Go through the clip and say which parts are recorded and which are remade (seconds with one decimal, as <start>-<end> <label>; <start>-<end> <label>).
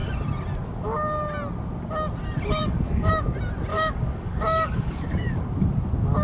0.0-2.6 recorded; 2.6-3.1 remade; 3.1-3.7 recorded; 3.7-5.5 remade; 5.5-6.2 recorded